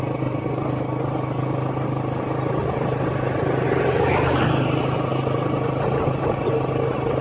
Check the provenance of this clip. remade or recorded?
recorded